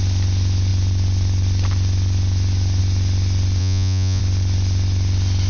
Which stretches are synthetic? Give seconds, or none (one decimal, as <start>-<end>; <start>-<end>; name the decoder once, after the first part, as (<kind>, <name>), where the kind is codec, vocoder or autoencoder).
3.6-4.2 (vocoder, Vocos)